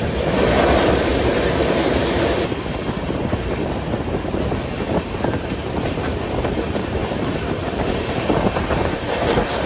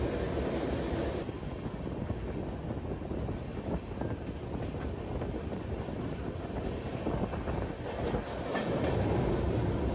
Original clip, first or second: second